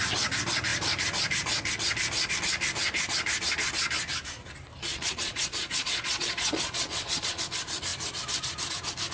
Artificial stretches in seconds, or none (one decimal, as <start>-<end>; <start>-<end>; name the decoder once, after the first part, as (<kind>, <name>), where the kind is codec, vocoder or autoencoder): 4.9-7.4 (vocoder, Vocos)